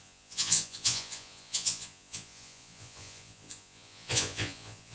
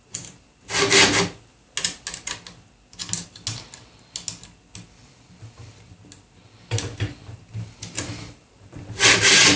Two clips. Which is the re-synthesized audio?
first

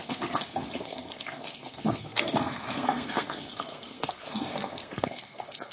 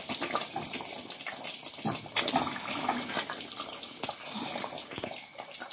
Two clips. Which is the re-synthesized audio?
first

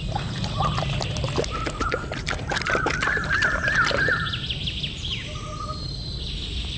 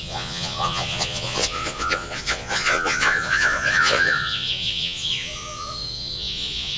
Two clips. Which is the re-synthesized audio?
second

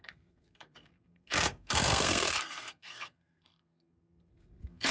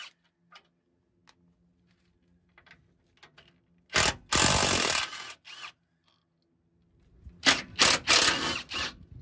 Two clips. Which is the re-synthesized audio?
first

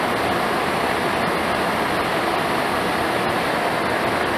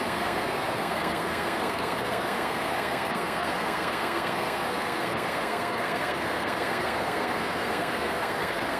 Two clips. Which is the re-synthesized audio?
second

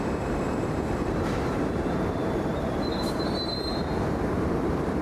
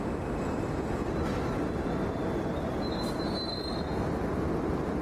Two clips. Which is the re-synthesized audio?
first